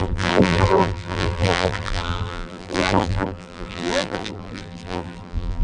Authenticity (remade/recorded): remade